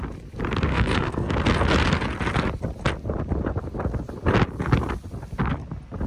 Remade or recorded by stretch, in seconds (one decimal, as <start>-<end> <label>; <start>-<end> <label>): 0.0-0.7 recorded; 0.7-1.3 remade; 1.3-6.1 recorded